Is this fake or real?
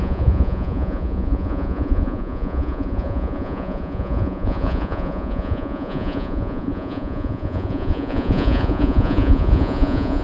fake